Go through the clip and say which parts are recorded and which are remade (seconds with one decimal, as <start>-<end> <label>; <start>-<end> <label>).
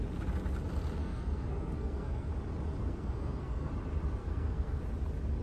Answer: 0.0-1.0 recorded; 1.0-2.3 remade; 2.3-2.8 recorded; 2.8-3.7 remade; 3.7-4.2 recorded; 4.2-4.8 remade; 4.8-5.4 recorded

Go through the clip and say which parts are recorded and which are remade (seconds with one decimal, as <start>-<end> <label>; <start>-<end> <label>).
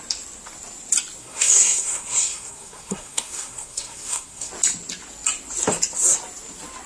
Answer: 0.0-1.2 recorded; 1.2-4.5 remade; 4.5-6.9 recorded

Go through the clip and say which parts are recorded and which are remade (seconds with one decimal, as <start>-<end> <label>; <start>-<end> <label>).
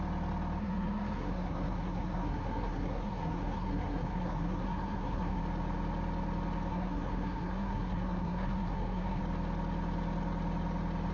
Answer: 0.0-0.6 recorded; 0.6-5.4 remade; 5.4-6.7 recorded; 6.7-9.2 remade; 9.2-11.1 recorded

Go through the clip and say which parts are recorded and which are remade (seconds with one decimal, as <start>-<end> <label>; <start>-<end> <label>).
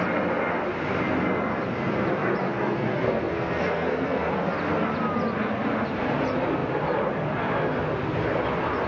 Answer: 0.0-2.4 recorded; 2.4-4.3 remade; 4.3-8.9 recorded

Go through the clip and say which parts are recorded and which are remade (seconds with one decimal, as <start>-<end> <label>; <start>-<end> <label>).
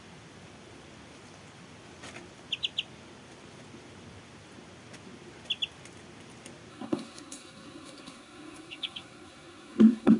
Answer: 0.0-6.7 recorded; 6.7-10.2 remade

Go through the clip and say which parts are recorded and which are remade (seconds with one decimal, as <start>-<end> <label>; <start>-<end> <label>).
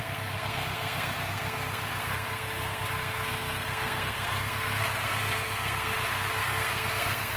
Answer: 0.0-7.4 remade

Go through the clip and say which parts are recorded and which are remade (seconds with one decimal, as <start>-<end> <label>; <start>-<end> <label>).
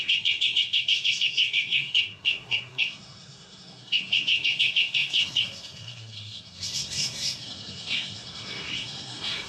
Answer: 0.0-9.5 remade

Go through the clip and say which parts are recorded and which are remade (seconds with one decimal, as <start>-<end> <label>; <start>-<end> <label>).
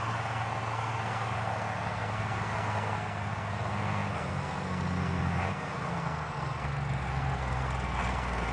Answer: 0.0-8.5 remade